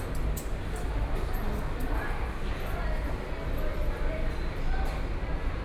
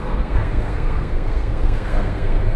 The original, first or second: first